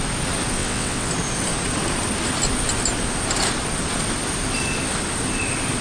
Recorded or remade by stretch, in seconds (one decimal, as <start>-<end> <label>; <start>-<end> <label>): 0.0-0.6 recorded; 0.6-1.1 remade; 1.1-5.8 recorded